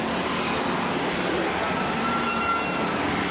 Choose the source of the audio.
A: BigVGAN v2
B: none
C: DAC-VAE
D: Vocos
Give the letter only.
B